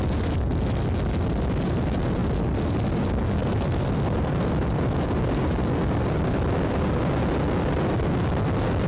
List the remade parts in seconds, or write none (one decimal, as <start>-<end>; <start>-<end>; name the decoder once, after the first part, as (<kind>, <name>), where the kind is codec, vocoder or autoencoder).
3.4-7.0 (vocoder, BigVGAN v2)